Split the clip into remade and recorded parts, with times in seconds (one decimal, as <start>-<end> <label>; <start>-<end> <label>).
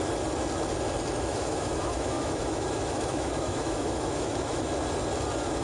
0.0-1.3 recorded; 1.3-4.7 remade; 4.7-5.6 recorded